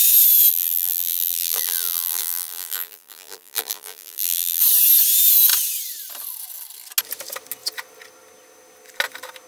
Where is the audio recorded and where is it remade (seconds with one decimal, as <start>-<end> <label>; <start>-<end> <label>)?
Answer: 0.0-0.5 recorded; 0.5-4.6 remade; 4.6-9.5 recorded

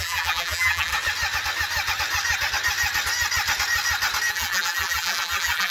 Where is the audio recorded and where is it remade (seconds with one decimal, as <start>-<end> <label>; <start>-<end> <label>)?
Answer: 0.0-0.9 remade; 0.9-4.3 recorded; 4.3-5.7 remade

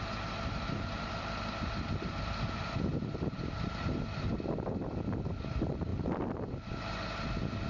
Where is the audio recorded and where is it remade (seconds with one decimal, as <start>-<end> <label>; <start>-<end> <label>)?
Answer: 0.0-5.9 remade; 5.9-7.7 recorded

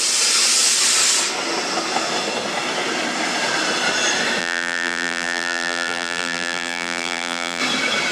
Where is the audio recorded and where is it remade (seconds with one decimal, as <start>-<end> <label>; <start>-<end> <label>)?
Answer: 0.0-4.4 recorded; 4.4-7.6 remade; 7.6-8.1 recorded

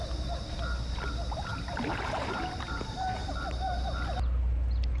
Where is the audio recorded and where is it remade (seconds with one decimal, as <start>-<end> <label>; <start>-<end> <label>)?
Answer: 0.0-1.5 recorded; 1.5-3.3 remade; 3.3-5.0 recorded

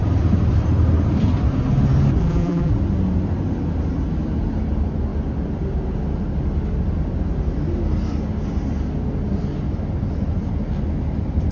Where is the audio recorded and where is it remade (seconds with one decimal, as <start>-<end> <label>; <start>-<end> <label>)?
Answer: 0.0-2.2 recorded; 2.2-2.7 remade; 2.7-11.5 recorded

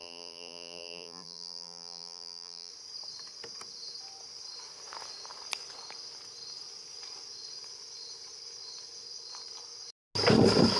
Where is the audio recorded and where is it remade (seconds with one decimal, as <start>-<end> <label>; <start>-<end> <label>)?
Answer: 0.0-2.7 remade; 2.7-10.8 recorded

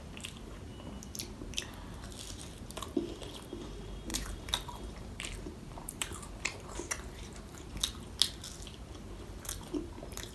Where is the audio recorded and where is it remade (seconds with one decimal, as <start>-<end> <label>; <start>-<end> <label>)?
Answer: 0.0-4.1 recorded; 4.1-7.7 remade; 7.7-10.3 recorded